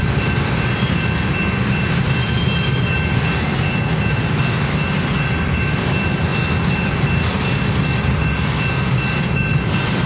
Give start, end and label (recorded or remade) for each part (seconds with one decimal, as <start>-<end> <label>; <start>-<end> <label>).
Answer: 0.0-10.1 recorded